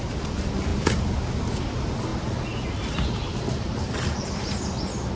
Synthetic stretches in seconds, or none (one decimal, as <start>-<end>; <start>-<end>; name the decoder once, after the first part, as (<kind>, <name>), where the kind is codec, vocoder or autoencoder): none